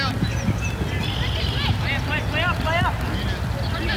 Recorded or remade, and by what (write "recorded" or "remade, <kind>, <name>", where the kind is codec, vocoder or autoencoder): recorded